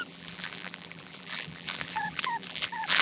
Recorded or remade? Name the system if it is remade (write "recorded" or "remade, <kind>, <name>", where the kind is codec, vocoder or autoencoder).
remade, vocoder, BigVGAN v2